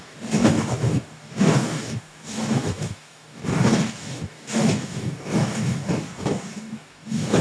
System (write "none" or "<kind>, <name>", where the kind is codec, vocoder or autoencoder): codec, DAC